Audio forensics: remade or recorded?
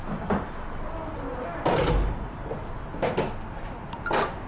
recorded